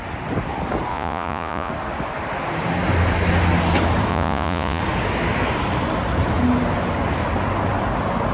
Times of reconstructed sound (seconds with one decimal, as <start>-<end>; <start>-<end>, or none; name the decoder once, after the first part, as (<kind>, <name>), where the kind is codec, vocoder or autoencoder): 0.9-1.7 (vocoder, Vocos); 4.1-4.8